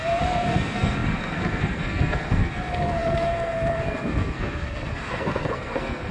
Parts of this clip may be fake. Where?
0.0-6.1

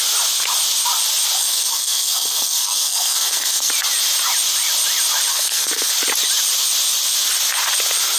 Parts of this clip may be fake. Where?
1.4-3.7; 5.3-5.9